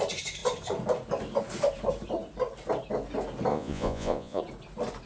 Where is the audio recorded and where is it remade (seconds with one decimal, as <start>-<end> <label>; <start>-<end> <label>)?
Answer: 0.0-3.5 recorded; 3.5-4.4 remade; 4.4-5.1 recorded